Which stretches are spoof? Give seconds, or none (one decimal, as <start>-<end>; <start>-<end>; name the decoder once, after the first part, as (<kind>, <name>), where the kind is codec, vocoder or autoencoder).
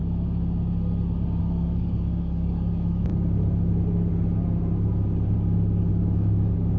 1.4-3.1 (codec, DAC); 5.9-6.8